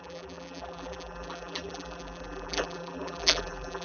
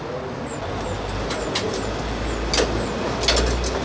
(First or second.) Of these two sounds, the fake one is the first